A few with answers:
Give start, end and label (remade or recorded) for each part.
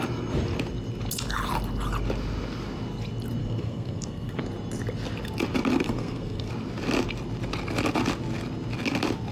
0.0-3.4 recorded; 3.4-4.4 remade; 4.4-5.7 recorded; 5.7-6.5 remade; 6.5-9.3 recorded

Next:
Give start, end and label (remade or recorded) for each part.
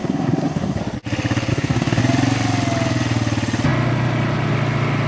0.0-0.8 remade; 0.8-1.5 recorded; 1.5-2.0 remade; 2.0-5.1 recorded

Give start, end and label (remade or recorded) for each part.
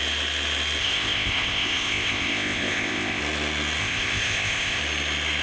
0.0-0.8 recorded; 0.8-3.2 remade; 3.2-3.8 recorded; 3.8-4.8 remade; 4.8-5.4 recorded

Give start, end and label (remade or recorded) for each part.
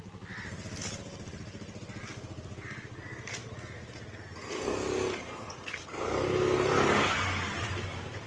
0.0-8.3 recorded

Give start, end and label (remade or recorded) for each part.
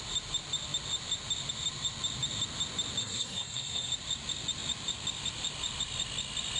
0.0-3.0 recorded; 3.0-3.9 remade; 3.9-6.6 recorded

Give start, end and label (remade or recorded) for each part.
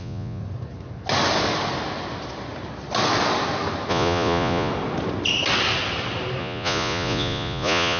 0.0-0.4 remade; 0.4-3.9 recorded; 3.9-4.7 remade; 4.7-6.4 recorded; 6.4-8.0 remade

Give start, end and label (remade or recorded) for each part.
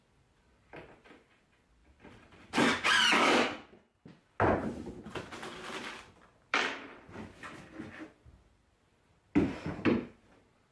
0.0-1.8 recorded; 1.8-2.7 remade; 2.7-6.3 recorded; 6.3-7.2 remade; 7.2-10.7 recorded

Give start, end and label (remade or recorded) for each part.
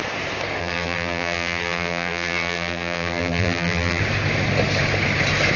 0.0-0.6 recorded; 0.6-4.0 remade; 4.0-5.6 recorded